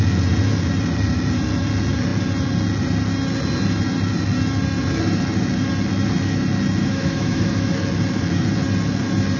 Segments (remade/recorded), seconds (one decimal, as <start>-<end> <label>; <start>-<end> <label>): 0.0-6.8 recorded; 6.8-7.7 remade; 7.7-9.4 recorded